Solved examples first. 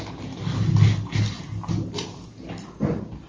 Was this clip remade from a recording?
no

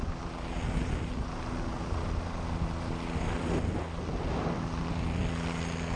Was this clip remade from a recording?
no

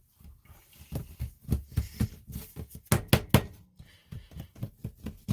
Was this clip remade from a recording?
no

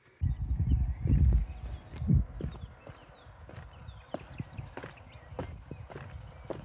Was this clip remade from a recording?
no